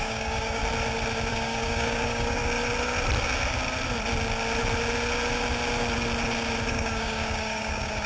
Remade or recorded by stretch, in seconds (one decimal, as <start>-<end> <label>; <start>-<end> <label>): 0.0-0.6 remade; 0.6-1.3 recorded; 1.3-2.4 remade; 2.4-6.7 recorded; 6.7-8.1 remade